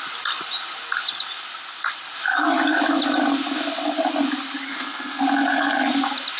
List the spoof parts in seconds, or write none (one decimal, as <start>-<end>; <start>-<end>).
4.7-5.2